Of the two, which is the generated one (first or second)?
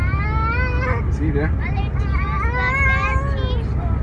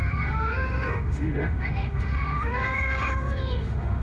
second